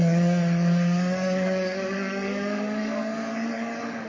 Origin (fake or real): fake